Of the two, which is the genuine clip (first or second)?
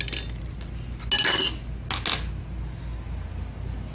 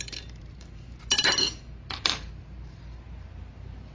first